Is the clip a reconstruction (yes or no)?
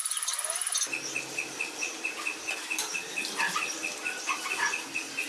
no